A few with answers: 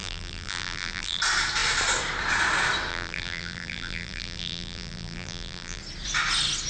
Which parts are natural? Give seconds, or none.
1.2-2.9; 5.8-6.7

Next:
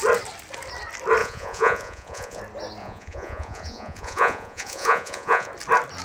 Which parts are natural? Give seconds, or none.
0.0-1.2; 2.4-2.8; 5.5-6.0

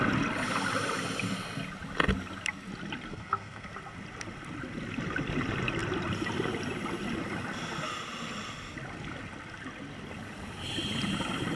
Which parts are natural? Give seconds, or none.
0.0-3.1; 3.7-11.6

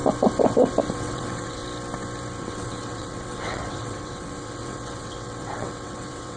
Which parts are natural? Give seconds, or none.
0.0-0.9; 1.6-2.4

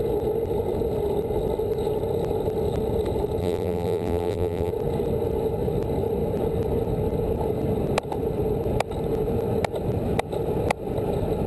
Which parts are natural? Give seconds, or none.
0.0-3.4; 4.7-11.5

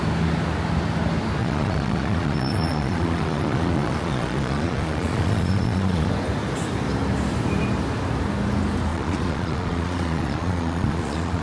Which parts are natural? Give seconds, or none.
0.0-1.4; 6.1-8.9

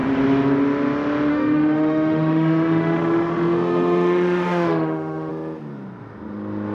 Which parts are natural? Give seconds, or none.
0.0-1.3; 5.3-6.7

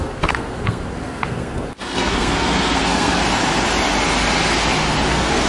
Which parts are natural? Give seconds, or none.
3.2-5.1